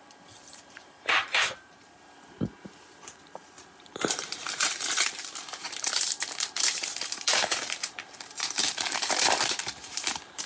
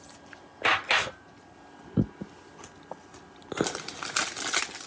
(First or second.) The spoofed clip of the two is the first